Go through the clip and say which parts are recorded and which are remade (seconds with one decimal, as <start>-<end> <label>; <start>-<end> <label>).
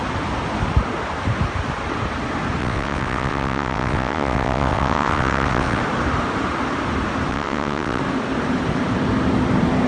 0.0-2.6 recorded; 2.6-5.8 remade; 5.8-7.3 recorded; 7.3-8.0 remade; 8.0-9.9 recorded